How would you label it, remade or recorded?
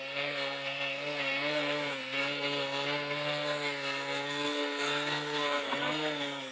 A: remade